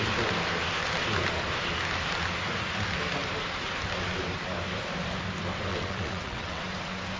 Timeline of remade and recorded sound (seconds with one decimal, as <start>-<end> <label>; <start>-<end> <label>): 0.0-5.7 recorded; 5.7-6.6 remade; 6.6-7.2 recorded